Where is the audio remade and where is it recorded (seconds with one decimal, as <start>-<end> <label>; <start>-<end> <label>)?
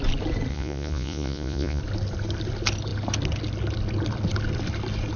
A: 0.0-0.5 recorded; 0.5-1.8 remade; 1.8-5.2 recorded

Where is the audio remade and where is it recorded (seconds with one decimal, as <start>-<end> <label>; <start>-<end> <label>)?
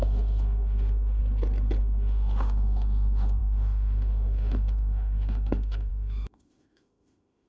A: 0.0-1.2 remade; 1.2-1.8 recorded; 1.8-7.5 remade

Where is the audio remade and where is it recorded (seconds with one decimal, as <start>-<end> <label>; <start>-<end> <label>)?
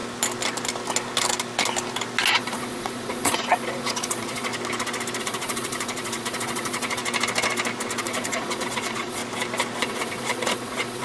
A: 0.0-2.3 recorded; 2.3-4.5 remade; 4.5-5.2 recorded; 5.2-7.0 remade; 7.0-8.0 recorded; 8.0-9.2 remade; 9.2-9.8 recorded; 9.8-11.0 remade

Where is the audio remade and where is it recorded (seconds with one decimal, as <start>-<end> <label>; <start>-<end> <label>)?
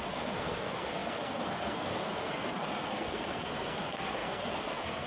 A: 0.0-5.1 remade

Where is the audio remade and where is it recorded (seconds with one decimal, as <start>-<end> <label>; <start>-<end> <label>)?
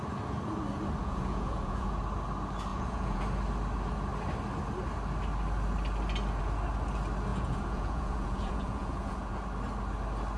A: 0.0-1.0 recorded; 1.0-2.0 remade; 2.0-2.7 recorded; 2.7-3.2 remade; 3.2-7.3 recorded; 7.3-9.4 remade; 9.4-10.4 recorded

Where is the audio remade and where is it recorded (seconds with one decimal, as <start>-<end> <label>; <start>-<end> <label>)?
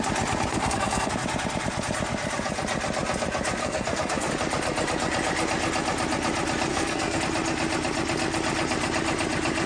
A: 0.0-0.5 recorded; 0.5-1.1 remade; 1.1-3.6 recorded; 3.6-4.3 remade; 4.3-6.7 recorded; 6.7-7.2 remade; 7.2-9.7 recorded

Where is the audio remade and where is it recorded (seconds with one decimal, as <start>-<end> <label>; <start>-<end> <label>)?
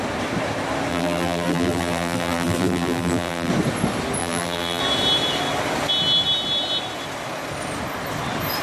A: 0.0-0.9 recorded; 0.9-3.5 remade; 3.5-4.2 recorded; 4.2-4.8 remade; 4.8-8.6 recorded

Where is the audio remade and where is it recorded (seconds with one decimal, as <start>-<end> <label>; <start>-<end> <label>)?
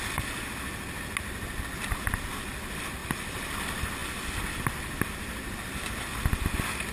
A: 0.0-6.9 recorded